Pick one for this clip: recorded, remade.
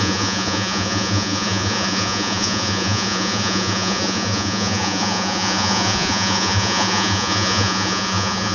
remade